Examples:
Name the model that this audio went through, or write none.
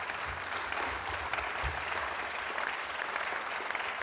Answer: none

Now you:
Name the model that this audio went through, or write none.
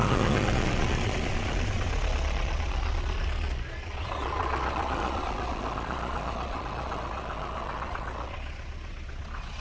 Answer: vocoder, Vocos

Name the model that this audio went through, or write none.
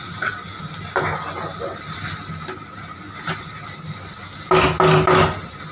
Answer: none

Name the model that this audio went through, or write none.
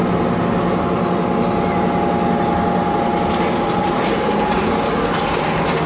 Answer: none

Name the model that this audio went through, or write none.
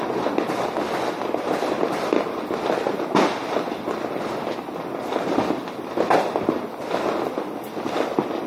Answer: none